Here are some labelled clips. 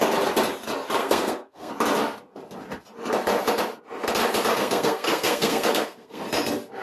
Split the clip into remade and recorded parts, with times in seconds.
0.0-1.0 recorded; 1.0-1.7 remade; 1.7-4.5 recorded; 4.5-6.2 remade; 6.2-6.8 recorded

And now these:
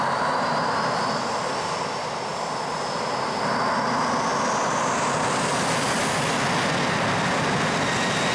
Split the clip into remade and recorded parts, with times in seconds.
0.0-8.3 recorded

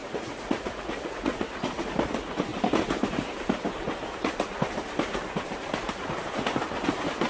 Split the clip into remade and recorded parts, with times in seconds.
0.0-1.9 remade; 1.9-7.3 recorded